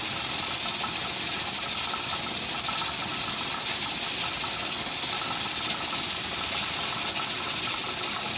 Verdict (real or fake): real